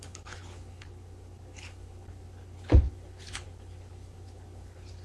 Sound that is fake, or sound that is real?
fake